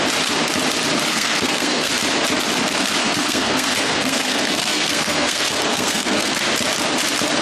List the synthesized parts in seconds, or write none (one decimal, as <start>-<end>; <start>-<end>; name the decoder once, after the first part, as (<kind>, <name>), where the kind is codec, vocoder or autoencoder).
1.1-1.9 (codec, SNAC); 3.0-6.4